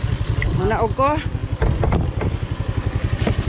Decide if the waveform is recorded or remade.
recorded